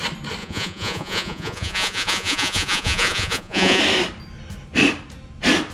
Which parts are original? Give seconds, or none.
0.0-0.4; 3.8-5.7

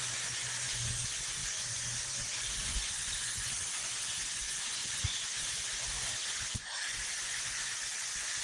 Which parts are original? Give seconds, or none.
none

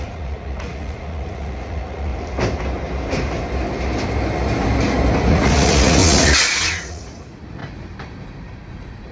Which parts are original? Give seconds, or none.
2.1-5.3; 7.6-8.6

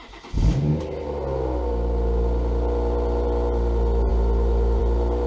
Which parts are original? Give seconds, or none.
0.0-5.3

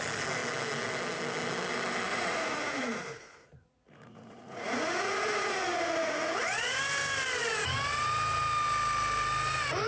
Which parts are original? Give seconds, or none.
0.0-2.1; 6.8-9.9